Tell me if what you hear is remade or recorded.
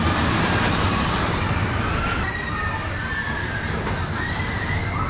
remade